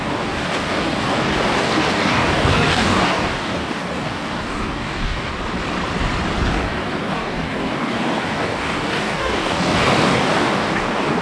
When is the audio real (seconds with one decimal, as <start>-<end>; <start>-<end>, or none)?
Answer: 5.3-6.5